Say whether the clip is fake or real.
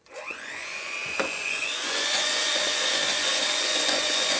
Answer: fake